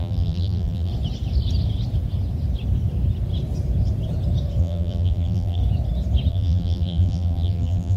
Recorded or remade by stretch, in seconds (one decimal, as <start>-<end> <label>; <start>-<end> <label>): 0.0-0.9 remade; 0.9-4.6 recorded; 4.6-5.6 remade; 5.6-6.3 recorded; 6.3-8.0 remade